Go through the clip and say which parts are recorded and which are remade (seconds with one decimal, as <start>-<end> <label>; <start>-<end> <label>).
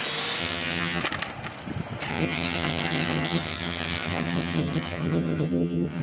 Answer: 0.0-0.4 recorded; 0.4-1.0 remade; 1.0-2.1 recorded; 2.1-6.0 remade